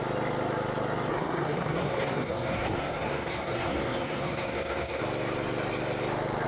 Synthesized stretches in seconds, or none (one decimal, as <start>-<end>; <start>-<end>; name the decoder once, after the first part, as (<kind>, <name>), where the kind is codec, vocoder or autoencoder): 1.1-5.0 (codec, SNAC)